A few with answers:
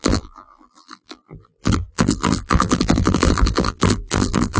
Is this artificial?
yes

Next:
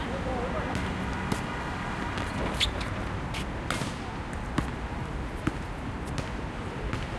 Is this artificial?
no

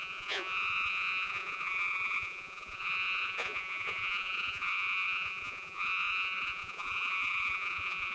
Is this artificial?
yes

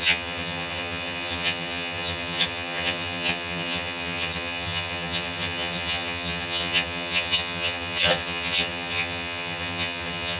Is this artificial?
yes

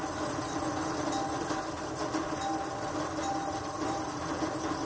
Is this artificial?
no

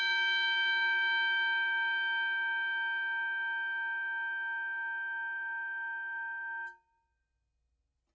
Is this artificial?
no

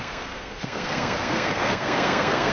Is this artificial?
yes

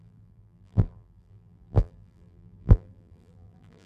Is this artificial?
yes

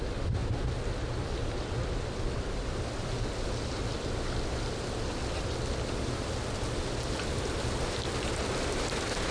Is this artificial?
no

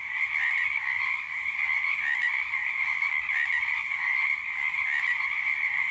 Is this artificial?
no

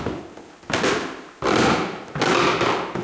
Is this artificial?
no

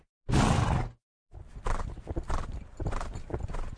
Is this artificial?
no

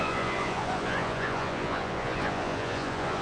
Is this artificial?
yes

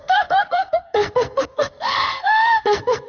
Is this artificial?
yes